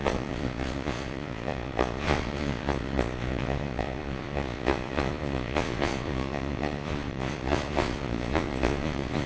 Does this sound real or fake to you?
fake